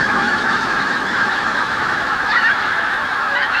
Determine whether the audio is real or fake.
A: fake